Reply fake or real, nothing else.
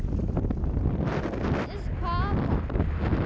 real